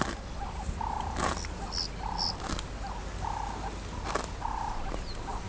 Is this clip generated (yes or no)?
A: no